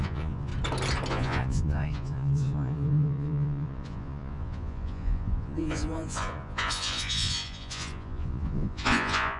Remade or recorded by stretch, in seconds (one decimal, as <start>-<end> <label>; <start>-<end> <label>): 0.0-0.5 remade; 0.5-1.1 recorded; 1.1-9.4 remade